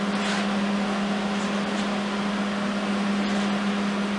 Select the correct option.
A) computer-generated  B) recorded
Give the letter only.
B